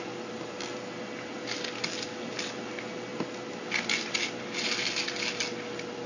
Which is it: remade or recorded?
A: recorded